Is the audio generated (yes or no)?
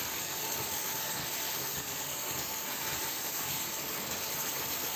yes